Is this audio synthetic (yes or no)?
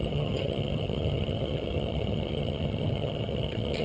yes